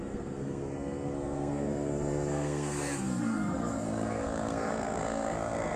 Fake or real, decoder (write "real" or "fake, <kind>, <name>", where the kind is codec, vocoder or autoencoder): fake, codec, SNAC